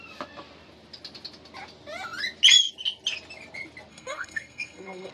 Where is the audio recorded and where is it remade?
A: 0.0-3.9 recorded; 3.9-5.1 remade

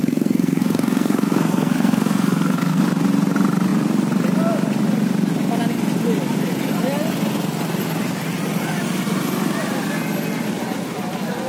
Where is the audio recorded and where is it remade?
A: 0.0-2.8 remade; 2.8-11.5 recorded

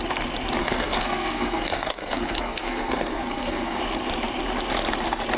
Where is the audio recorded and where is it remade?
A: 0.0-0.6 recorded; 0.6-3.8 remade; 3.8-5.4 recorded

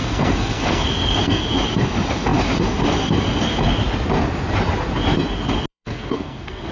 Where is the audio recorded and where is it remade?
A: 0.0-1.4 remade; 1.4-5.7 recorded; 5.7-6.7 remade

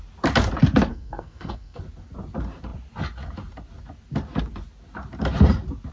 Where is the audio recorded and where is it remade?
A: 0.0-0.9 recorded; 0.9-1.8 remade; 1.8-5.9 recorded

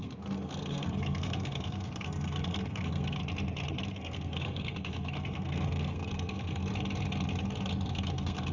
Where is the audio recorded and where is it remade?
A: 0.0-3.2 remade; 3.2-3.9 recorded; 3.9-6.7 remade; 6.7-7.9 recorded; 7.9-8.5 remade